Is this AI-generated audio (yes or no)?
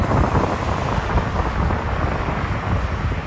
no